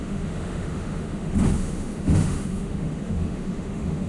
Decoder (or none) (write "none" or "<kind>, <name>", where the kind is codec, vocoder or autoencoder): autoencoder, DAC-VAE